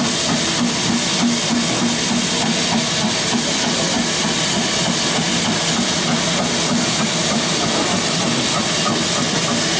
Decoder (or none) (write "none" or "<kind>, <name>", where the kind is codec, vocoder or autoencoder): none